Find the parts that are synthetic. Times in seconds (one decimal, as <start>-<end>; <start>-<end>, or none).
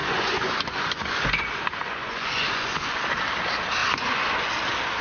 0.0-3.0; 3.8-4.5